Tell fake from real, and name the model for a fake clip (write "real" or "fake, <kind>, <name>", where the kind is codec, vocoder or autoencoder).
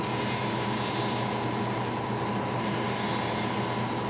real